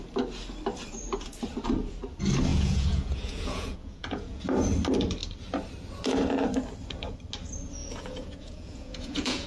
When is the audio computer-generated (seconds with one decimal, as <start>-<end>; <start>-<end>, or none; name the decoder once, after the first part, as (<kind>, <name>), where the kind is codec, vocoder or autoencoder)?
2.5-4.4 (vocoder, Vocos); 7.8-9.5